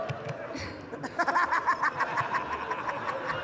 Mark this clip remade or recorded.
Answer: recorded